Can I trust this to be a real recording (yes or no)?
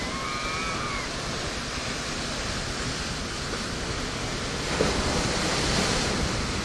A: yes